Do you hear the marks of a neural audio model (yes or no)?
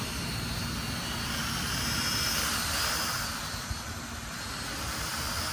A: no